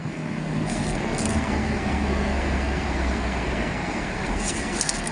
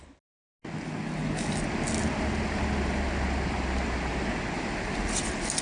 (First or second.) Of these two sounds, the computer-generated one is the first